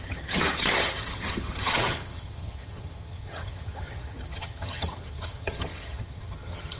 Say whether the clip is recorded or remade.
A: remade